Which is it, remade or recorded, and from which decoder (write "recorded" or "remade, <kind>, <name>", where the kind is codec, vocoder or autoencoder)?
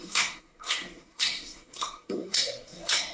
remade, codec, SNAC